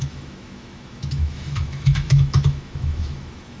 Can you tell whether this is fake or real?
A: fake